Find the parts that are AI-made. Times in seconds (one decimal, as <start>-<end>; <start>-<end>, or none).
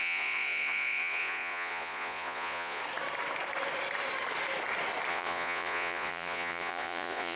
0.0-2.8; 5.1-7.4